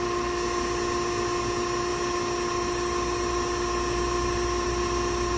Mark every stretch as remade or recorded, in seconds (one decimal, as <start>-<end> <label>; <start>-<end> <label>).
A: 0.0-5.4 recorded